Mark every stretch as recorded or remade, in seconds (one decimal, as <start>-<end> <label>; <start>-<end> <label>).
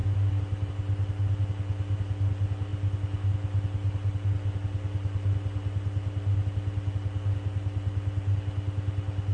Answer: 0.0-9.3 recorded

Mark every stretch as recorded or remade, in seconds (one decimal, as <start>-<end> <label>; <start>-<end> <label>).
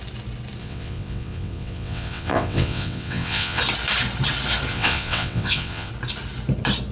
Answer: 0.0-0.6 recorded; 0.6-3.6 remade; 3.6-4.7 recorded; 4.7-5.9 remade; 5.9-6.9 recorded